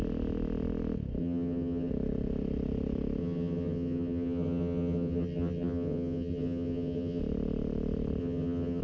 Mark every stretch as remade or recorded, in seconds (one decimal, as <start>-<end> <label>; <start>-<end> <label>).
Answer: 0.0-1.2 recorded; 1.2-1.9 remade; 1.9-3.2 recorded; 3.2-7.2 remade; 7.2-8.2 recorded; 8.2-8.8 remade